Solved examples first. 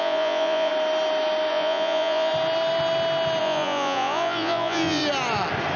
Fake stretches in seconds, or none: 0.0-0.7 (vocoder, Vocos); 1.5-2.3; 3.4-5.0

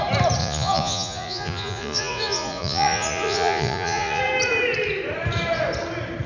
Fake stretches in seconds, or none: 0.4-4.2 (vocoder, Vocos)

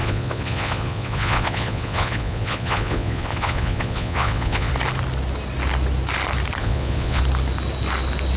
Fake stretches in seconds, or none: 0.0-4.7 (vocoder, Vocos); 6.6-7.2

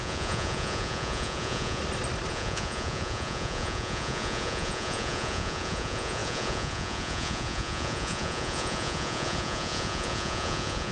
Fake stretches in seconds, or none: 0.0-1.8 (vocoder, Vocos); 2.3-10.9

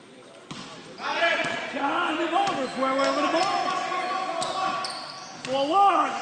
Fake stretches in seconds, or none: 1.1-1.8 (vocoder, Vocos)

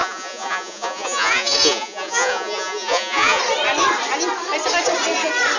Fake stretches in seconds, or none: 0.0-3.4 (vocoder, Vocos)

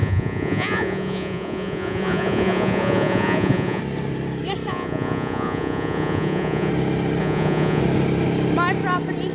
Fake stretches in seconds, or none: 0.0-3.8 (vocoder, Vocos); 4.7-6.7; 7.2-7.8

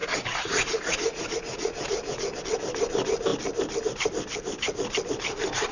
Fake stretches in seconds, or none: 0.0-2.4 (vocoder, Vocos)